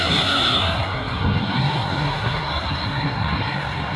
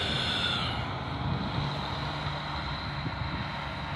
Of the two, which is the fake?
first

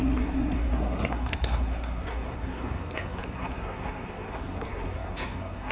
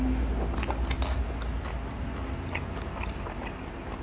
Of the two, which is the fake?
first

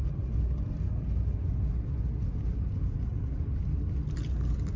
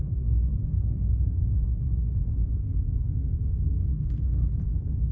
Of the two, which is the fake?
second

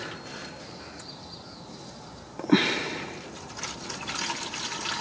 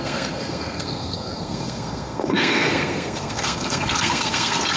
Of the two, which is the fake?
second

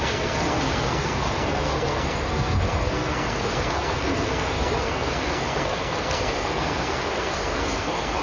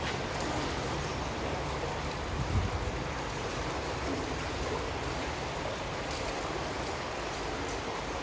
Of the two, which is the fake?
first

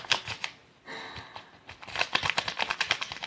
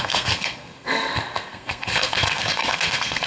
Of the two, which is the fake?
second